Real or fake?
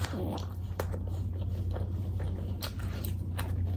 real